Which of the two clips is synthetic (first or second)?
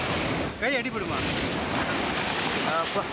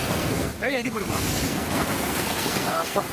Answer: second